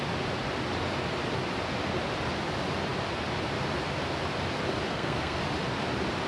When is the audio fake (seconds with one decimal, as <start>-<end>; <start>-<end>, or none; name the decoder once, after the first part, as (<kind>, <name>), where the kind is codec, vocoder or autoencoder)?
4.9-5.4 (codec, SNAC)